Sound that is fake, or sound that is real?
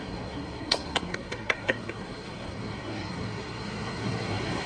fake